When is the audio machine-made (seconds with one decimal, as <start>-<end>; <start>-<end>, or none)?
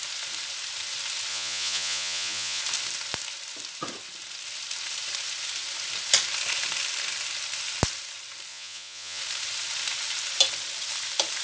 1.3-2.6; 8.5-9.2